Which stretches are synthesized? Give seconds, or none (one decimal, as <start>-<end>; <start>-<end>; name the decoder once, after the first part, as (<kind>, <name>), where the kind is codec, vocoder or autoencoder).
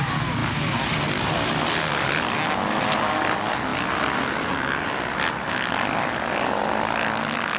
none